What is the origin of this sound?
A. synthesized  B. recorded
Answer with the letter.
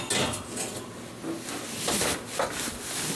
B